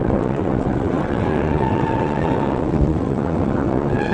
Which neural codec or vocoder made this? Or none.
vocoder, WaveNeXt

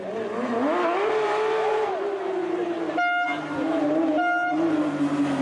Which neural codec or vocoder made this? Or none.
none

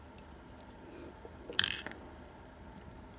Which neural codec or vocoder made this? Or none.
none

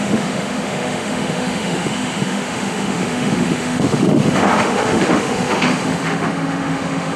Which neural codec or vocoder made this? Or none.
autoencoder, DAC-VAE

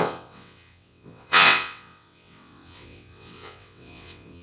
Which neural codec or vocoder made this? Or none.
vocoder, WaveNeXt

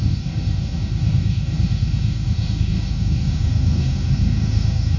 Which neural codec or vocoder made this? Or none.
codec, DAC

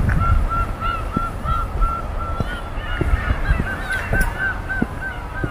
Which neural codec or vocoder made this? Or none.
none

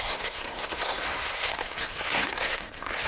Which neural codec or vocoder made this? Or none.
codec, SNAC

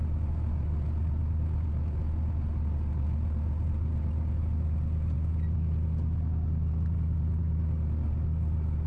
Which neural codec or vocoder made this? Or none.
none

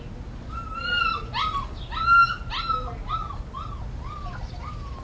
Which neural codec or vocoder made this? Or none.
none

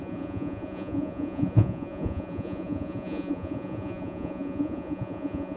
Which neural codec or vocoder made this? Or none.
vocoder, Vocos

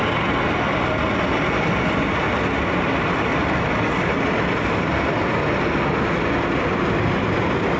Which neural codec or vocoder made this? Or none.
none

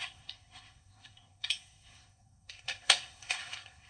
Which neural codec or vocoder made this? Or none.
codec, SNAC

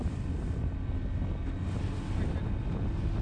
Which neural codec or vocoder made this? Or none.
none